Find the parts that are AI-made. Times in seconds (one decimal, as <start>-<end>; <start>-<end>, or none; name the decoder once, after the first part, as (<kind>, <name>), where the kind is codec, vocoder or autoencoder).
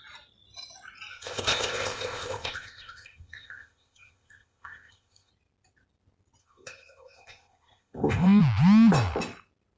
1.1-5.3 (codec, ZipCodec); 6.4-8.4